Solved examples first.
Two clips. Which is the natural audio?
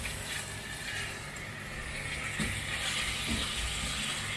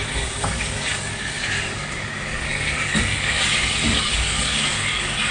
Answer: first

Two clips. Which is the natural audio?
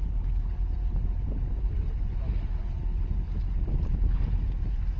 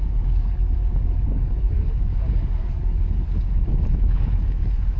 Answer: first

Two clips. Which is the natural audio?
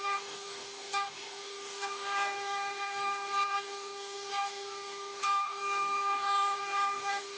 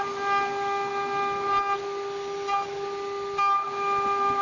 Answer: second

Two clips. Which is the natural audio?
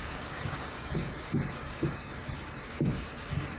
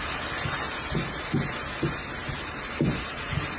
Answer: second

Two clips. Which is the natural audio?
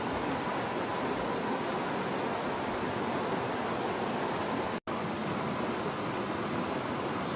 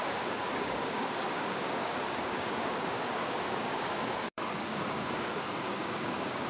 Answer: first